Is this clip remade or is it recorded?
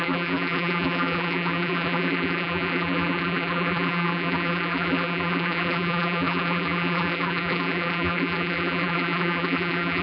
remade